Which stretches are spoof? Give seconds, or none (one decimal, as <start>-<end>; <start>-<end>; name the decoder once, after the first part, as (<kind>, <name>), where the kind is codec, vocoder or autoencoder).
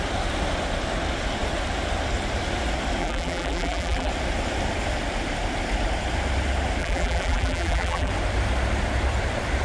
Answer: 3.0-4.1 (vocoder, BigVGAN v2); 6.8-8.1